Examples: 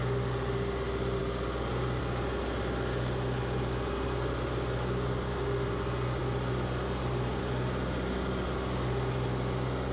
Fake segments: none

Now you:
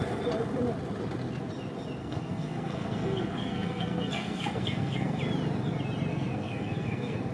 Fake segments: 2.0-5.2 (codec, SNAC); 6.1-7.3

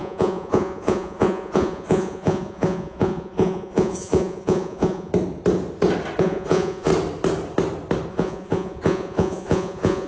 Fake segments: 0.0-5.1 (vocoder, Vocos); 6.2-6.9; 8.1-10.1